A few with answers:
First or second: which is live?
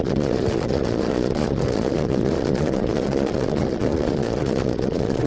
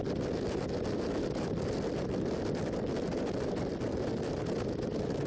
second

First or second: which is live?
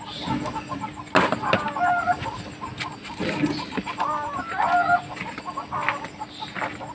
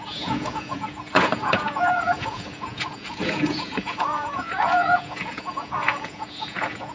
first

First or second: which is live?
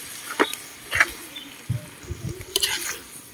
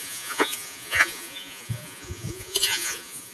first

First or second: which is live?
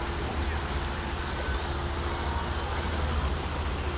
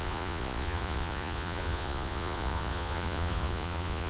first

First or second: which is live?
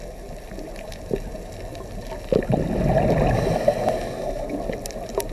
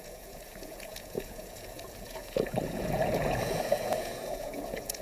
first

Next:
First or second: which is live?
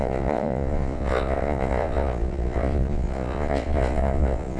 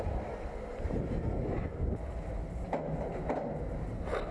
second